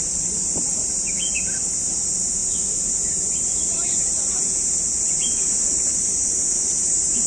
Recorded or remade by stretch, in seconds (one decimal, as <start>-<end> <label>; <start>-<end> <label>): 0.0-7.3 recorded